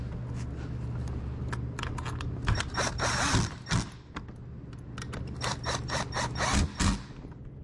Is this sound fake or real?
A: real